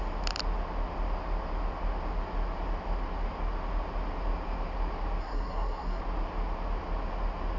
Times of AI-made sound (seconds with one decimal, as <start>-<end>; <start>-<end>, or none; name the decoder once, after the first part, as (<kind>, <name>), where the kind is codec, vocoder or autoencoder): 5.2-6.0 (codec, SNAC)